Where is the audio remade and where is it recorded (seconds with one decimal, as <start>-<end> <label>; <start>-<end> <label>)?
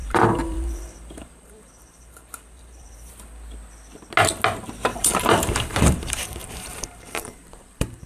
0.0-3.1 remade; 3.1-4.9 recorded; 4.9-8.1 remade